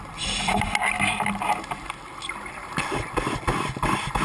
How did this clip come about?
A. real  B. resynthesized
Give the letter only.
A